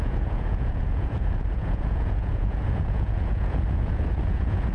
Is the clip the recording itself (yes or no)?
no